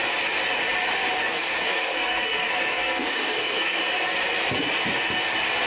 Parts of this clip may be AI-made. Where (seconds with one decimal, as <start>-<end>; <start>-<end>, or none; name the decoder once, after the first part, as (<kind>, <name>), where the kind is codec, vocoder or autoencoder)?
1.2-3.8 (codec, SNAC)